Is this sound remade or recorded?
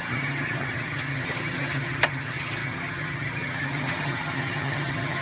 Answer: remade